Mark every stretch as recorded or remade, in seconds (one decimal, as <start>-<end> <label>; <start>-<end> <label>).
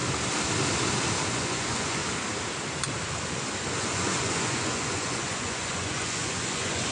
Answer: 0.0-1.3 recorded; 1.3-2.0 remade; 2.0-3.7 recorded; 3.7-6.9 remade